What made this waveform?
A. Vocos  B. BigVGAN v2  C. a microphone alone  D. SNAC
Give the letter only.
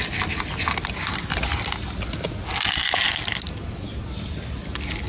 C